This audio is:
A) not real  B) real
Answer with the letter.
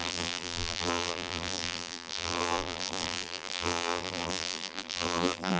A